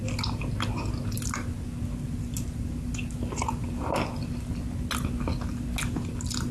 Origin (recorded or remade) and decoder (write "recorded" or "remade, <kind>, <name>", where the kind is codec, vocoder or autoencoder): recorded